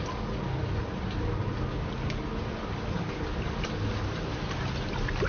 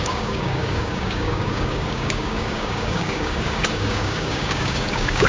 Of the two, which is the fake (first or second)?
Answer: second